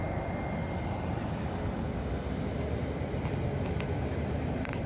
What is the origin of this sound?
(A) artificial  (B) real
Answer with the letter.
B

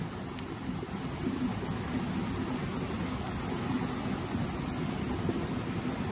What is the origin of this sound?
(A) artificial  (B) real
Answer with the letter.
B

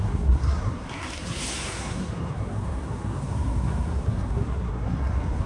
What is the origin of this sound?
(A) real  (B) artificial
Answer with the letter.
B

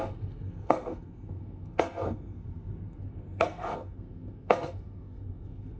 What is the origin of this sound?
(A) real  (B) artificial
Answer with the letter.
B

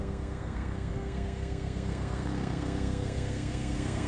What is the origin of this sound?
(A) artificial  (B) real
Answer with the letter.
A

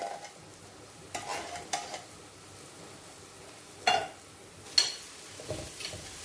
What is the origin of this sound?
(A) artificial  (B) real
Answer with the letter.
B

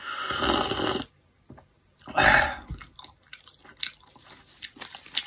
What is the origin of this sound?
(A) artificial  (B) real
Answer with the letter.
B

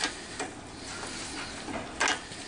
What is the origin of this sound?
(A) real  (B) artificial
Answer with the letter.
A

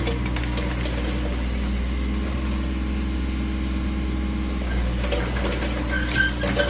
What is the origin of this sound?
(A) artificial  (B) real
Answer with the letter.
B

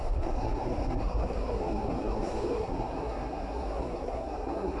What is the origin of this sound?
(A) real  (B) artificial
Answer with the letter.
B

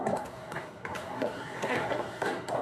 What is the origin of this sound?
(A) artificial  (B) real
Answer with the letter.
A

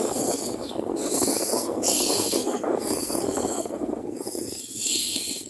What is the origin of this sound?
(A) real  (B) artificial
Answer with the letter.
B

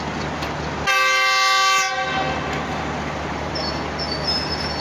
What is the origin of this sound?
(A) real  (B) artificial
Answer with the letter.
A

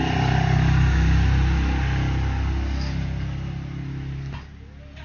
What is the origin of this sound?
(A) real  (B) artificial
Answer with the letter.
A